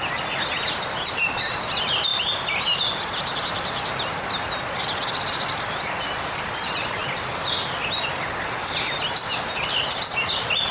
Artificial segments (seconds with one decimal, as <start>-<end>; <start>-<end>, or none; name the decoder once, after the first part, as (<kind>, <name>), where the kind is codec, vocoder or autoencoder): none